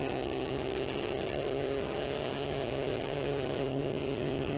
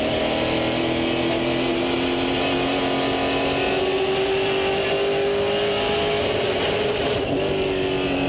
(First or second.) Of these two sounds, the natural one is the second